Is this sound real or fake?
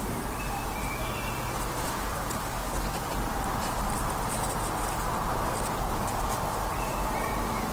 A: fake